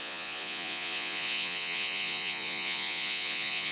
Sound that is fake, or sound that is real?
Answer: fake